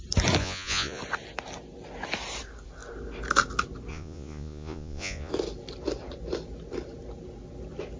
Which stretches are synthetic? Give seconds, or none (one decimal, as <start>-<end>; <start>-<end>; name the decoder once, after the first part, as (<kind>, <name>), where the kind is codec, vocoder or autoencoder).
0.4-1.0 (vocoder, Vocos); 3.9-5.3